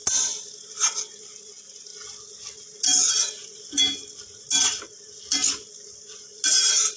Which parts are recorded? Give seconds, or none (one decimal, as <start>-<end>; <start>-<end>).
0.0-7.0

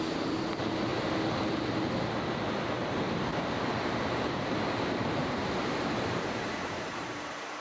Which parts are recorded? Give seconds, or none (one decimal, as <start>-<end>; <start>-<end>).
0.0-2.8

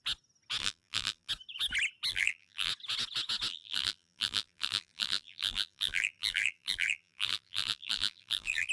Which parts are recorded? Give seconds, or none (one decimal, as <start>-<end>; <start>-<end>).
0.0-0.6; 1.3-2.1; 2.7-3.5

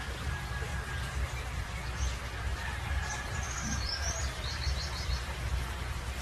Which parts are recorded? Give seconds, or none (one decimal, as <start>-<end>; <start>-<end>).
0.0-2.5; 5.1-6.2

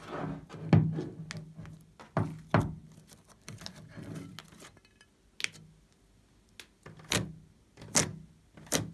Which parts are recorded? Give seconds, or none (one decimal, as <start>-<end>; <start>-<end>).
0.0-8.9

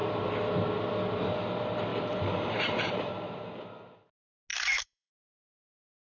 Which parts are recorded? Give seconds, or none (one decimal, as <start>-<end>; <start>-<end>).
0.0-1.9; 3.1-4.5; 5.1-6.1